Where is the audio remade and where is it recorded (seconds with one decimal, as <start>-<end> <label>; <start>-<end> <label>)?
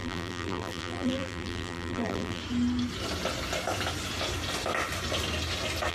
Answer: 0.0-2.4 remade; 2.4-5.9 recorded